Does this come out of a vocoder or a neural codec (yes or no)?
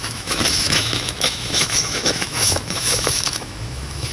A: yes